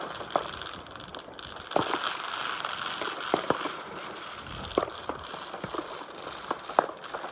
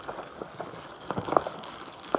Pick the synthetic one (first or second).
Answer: second